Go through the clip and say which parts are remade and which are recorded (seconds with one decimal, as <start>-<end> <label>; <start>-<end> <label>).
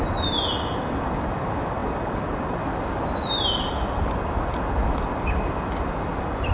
0.0-6.5 recorded